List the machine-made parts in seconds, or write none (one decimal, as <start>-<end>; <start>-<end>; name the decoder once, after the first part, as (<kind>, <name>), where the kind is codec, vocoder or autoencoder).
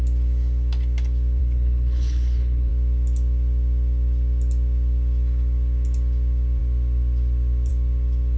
1.4-2.7 (codec, HILCodec)